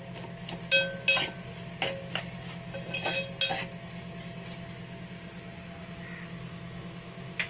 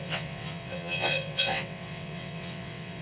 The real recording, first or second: first